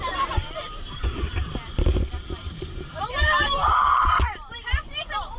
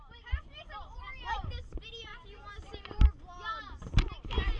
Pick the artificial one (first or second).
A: first